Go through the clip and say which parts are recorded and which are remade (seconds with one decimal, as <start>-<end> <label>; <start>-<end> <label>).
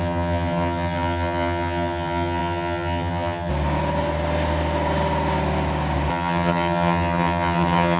0.0-3.5 remade; 3.5-6.1 recorded; 6.1-8.0 remade